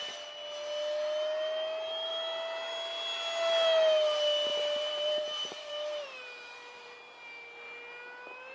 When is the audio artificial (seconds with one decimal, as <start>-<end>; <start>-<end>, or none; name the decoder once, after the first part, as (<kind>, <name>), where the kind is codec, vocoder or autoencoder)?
4.5-7.0 (vocoder, BigVGAN v2)